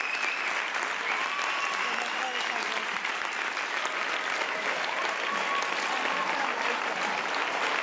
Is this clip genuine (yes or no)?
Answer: yes